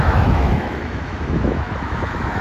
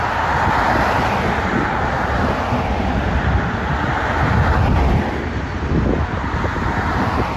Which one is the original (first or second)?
second